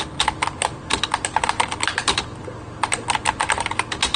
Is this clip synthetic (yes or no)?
no